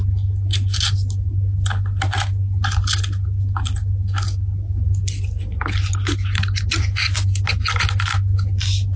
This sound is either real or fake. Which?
real